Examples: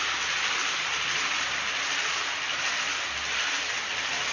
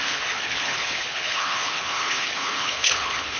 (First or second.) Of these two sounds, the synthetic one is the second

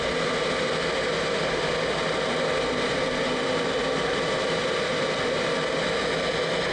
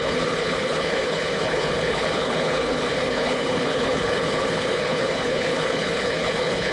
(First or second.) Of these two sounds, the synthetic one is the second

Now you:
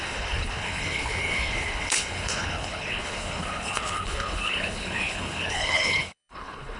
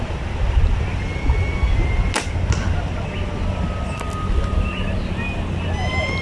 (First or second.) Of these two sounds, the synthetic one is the first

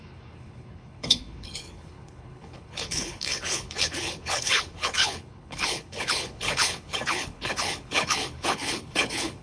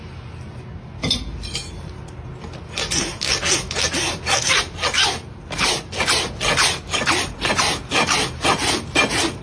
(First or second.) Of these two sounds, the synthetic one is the first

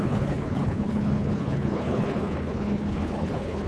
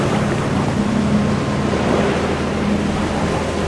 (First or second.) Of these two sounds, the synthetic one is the first